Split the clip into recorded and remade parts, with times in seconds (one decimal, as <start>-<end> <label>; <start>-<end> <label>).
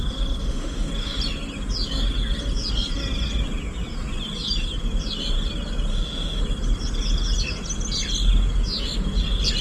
0.0-0.4 recorded; 0.4-0.9 remade; 0.9-5.9 recorded; 5.9-6.4 remade; 6.4-9.6 recorded